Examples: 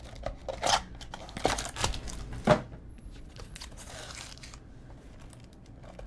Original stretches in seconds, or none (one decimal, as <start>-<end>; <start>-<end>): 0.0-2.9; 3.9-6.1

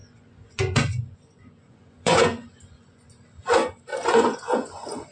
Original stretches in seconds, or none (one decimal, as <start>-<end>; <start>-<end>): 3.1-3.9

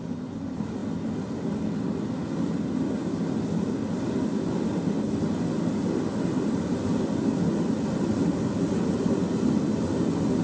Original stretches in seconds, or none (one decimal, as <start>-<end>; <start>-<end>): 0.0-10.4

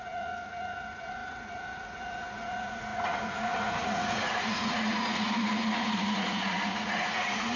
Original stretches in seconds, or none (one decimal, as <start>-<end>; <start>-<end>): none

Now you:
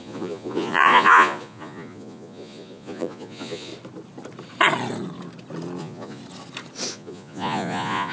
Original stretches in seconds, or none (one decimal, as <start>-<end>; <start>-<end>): 3.7-5.8; 6.2-6.9

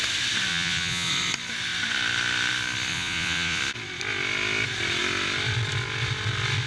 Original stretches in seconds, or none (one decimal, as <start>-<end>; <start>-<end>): 0.0-0.5; 1.1-2.9; 3.6-6.7

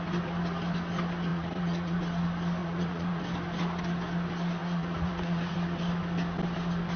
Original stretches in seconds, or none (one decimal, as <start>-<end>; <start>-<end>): 0.0-1.3; 2.0-2.6; 3.2-4.6; 5.5-7.0